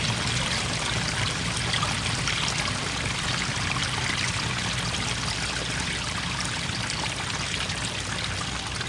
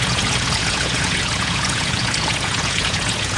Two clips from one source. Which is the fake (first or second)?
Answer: second